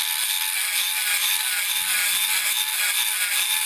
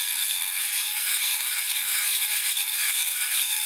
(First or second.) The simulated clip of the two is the second